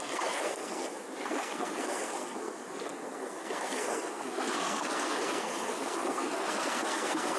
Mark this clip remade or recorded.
remade